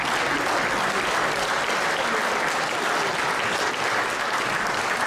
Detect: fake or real real